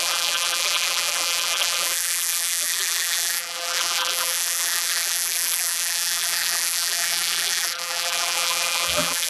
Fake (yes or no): yes